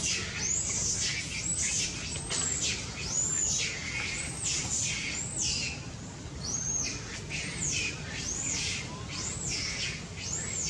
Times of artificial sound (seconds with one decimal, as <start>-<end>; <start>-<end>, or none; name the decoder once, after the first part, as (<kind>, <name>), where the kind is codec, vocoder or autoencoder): none